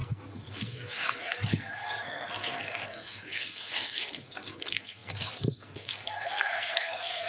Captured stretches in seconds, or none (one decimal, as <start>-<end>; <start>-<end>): none